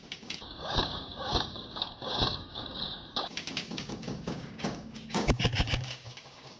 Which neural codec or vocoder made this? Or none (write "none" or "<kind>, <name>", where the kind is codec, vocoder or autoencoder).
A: codec, DAC